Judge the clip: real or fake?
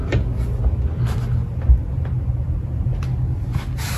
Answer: real